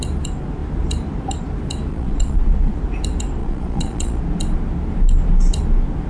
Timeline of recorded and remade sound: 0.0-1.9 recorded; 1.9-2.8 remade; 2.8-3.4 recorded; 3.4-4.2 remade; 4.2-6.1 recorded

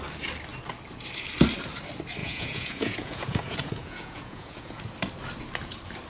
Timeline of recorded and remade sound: 0.0-2.2 recorded; 2.2-4.8 remade; 4.8-6.1 recorded

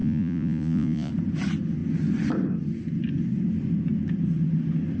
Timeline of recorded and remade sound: 0.0-1.1 remade; 1.1-5.0 recorded

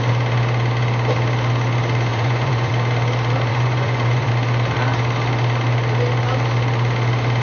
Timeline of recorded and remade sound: 0.0-2.1 recorded; 2.1-2.7 remade; 2.7-3.5 recorded; 3.5-4.3 remade; 4.3-7.4 recorded

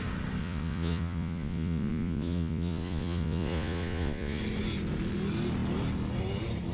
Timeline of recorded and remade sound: 0.0-0.4 recorded; 0.4-4.4 remade; 4.4-6.7 recorded

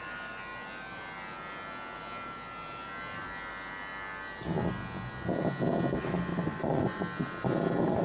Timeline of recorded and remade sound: 0.0-6.3 recorded; 6.3-7.0 remade; 7.0-8.0 recorded

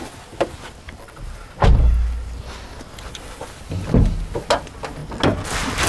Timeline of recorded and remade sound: 0.0-5.9 recorded